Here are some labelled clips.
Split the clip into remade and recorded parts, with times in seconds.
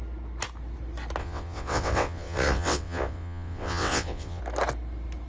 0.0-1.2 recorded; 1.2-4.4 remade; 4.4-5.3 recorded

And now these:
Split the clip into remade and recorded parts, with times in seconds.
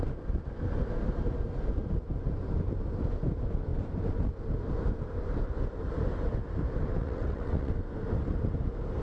0.0-7.0 recorded; 7.0-7.7 remade; 7.7-9.0 recorded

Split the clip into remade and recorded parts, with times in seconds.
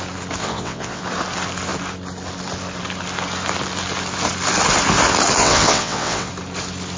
0.0-0.4 recorded; 0.4-1.0 remade; 1.0-5.4 recorded; 5.4-6.3 remade; 6.3-7.0 recorded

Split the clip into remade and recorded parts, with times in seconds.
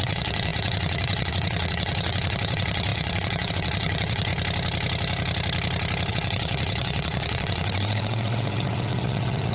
0.0-4.3 remade; 4.3-6.1 recorded; 6.1-9.5 remade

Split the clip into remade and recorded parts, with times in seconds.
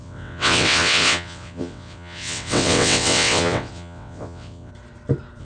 0.0-4.7 remade; 4.7-5.4 recorded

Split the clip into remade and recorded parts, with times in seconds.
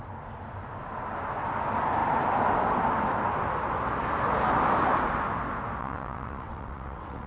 0.0-5.8 recorded; 5.8-7.3 remade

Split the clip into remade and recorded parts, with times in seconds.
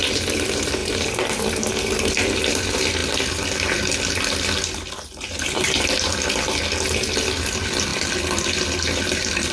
0.0-9.5 recorded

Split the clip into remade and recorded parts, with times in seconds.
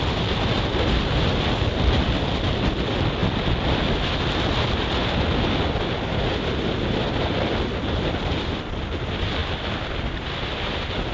0.0-11.1 recorded